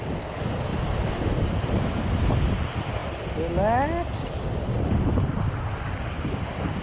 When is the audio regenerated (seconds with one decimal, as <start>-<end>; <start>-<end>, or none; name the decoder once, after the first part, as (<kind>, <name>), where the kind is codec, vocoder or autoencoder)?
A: none